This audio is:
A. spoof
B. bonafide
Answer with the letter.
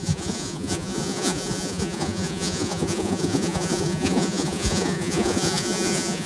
A